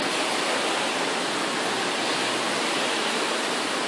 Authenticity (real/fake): real